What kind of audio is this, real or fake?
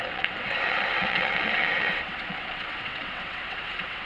fake